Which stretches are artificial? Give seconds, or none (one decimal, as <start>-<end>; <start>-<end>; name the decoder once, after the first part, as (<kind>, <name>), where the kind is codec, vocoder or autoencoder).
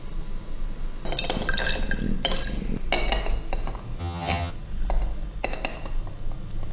4.0-4.5 (vocoder, HiFi-GAN)